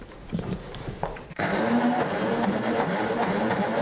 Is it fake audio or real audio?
fake